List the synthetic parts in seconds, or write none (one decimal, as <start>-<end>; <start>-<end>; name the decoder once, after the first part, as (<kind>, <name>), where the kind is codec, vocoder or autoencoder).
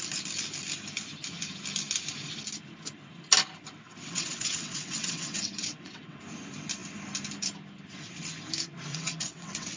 3.8-6.2 (vocoder, WaveNeXt); 8.9-9.8